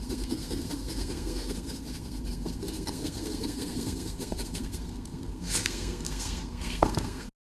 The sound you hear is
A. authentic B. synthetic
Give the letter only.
B